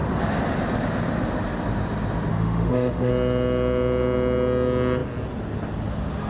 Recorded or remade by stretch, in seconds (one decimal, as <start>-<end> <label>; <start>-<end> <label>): 0.0-2.3 recorded; 2.3-3.1 remade; 3.1-6.3 recorded